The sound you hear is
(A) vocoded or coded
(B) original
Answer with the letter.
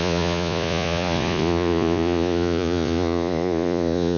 A